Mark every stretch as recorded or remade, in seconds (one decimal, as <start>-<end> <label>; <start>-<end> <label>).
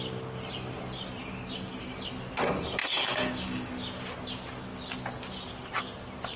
0.0-2.8 recorded; 2.8-3.7 remade; 3.7-6.4 recorded